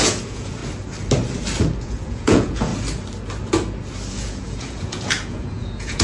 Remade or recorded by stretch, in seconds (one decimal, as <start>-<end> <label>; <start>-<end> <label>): 0.0-0.6 remade; 0.6-1.8 recorded; 1.8-2.7 remade; 2.7-4.1 recorded; 4.1-6.0 remade